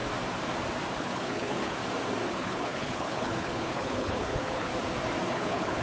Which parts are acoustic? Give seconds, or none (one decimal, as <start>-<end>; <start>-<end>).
0.0-1.0; 1.8-2.3; 4.7-5.3